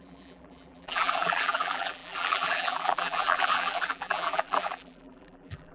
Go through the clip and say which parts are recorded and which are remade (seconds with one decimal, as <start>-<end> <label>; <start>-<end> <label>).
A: 0.0-5.7 remade